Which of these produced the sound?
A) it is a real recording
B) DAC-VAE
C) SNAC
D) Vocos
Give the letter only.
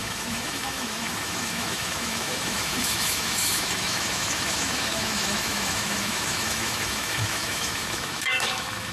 B